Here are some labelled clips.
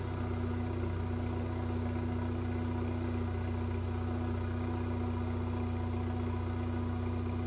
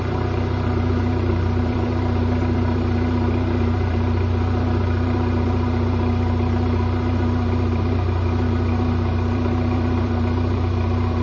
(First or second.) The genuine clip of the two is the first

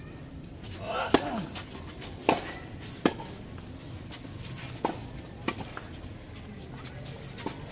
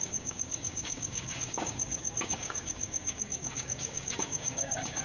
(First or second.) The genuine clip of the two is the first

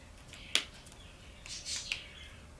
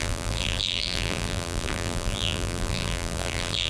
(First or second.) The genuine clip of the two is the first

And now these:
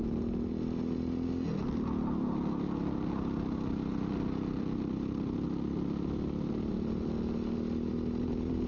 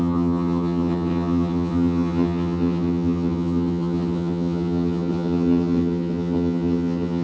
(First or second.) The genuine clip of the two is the first